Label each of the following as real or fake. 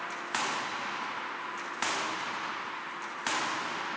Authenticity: real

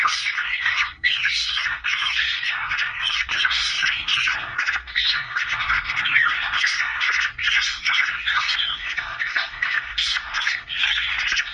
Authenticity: fake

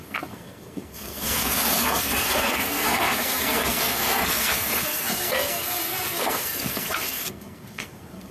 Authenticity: fake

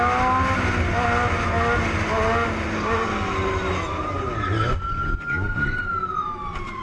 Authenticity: real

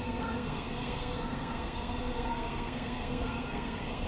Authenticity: fake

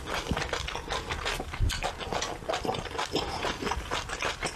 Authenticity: real